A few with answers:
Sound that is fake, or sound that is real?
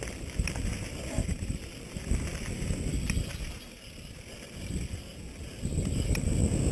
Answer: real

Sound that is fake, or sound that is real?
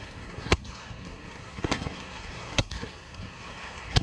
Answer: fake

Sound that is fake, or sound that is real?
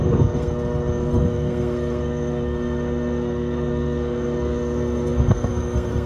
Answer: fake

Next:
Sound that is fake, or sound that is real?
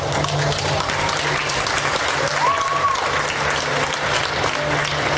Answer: real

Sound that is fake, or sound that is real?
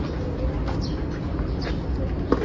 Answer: real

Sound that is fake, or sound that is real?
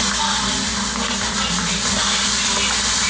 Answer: real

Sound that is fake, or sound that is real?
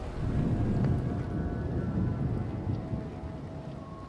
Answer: real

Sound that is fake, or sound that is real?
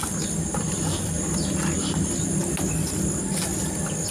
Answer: real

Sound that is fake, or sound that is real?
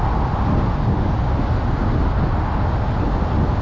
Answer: real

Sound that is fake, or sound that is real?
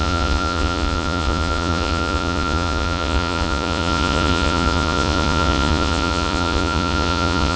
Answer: fake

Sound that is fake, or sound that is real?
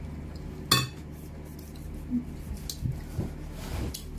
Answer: real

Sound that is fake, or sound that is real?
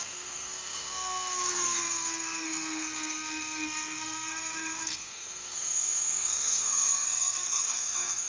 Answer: fake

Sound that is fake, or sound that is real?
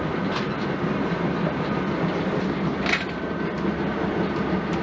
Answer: real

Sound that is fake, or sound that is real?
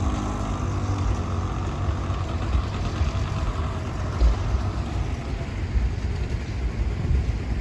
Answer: real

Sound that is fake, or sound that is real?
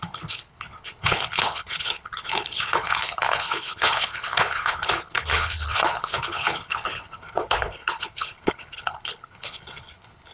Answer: fake